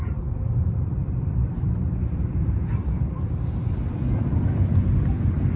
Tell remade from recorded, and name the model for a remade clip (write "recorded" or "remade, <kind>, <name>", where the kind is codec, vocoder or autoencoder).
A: remade, vocoder, BigVGAN v2